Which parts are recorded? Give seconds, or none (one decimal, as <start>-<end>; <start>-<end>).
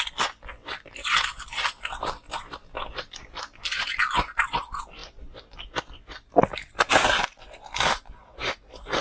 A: 0.0-6.5; 8.5-9.0